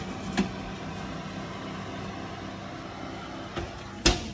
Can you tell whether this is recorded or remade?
recorded